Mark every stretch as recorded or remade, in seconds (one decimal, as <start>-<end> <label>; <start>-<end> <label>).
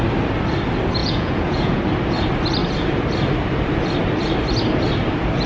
0.0-1.0 recorded; 1.0-1.8 remade; 1.8-5.5 recorded